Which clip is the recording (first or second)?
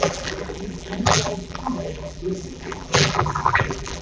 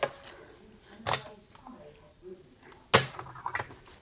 second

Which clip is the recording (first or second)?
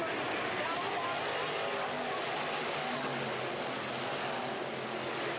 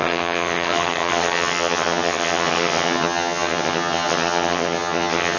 first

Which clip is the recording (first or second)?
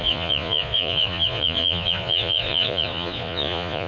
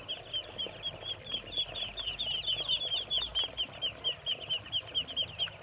second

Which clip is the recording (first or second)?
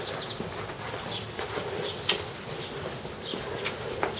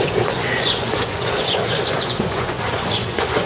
first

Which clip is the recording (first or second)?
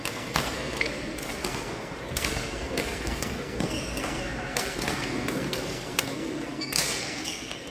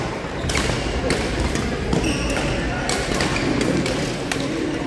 second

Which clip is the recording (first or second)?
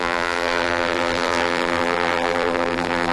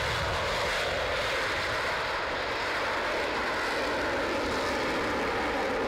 second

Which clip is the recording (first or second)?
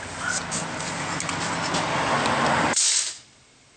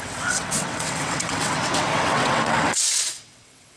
first